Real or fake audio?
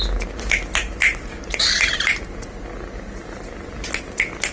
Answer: real